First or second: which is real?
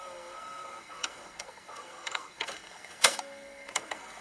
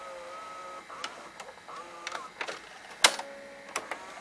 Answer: second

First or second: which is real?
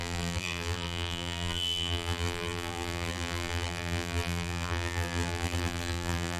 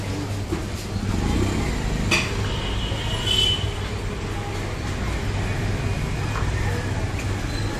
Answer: second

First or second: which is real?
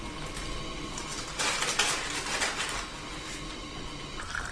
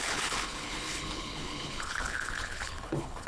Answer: first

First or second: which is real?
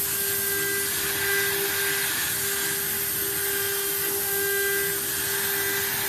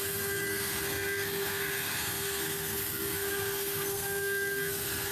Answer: first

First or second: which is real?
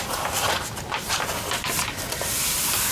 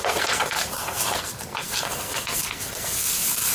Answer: first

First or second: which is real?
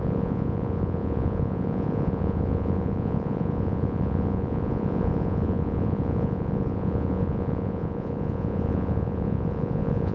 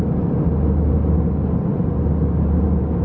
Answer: second